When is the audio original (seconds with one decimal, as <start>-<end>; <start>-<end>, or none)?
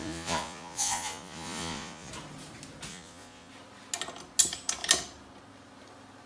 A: 2.1-2.9; 3.5-6.3